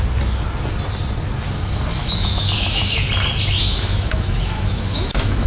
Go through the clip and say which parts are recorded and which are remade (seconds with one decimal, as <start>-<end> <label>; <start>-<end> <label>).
0.0-2.0 recorded; 2.0-3.0 remade; 3.0-3.6 recorded; 3.6-5.5 remade